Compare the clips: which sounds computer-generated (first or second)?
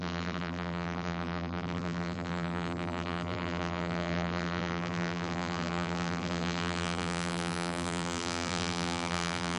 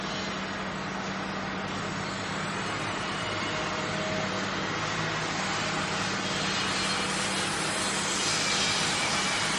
first